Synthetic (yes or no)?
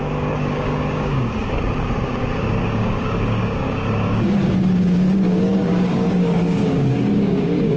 yes